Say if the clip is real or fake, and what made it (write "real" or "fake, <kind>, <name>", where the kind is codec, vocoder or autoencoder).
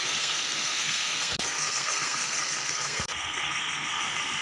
fake, codec, SNAC